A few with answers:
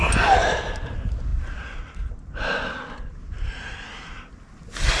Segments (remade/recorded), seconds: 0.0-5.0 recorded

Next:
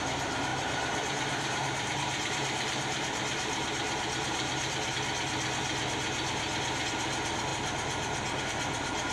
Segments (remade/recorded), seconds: 0.0-0.5 recorded; 0.5-4.9 remade; 4.9-9.1 recorded

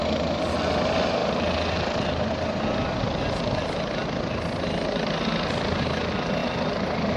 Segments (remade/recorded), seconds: 0.0-7.2 recorded

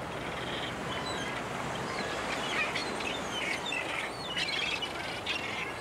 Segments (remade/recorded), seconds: 0.0-0.8 recorded; 0.8-1.3 remade; 1.3-2.8 recorded; 2.8-5.1 remade; 5.1-5.8 recorded

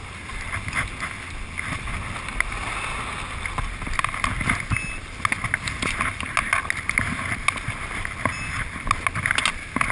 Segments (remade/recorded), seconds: 0.0-9.9 recorded